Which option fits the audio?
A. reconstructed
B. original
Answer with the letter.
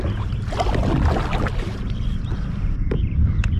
B